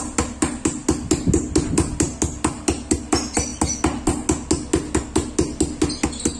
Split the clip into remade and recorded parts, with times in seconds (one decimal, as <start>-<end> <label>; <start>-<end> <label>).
0.0-6.4 recorded